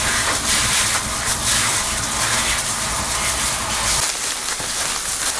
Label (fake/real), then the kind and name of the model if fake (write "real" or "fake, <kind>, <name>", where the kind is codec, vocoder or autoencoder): real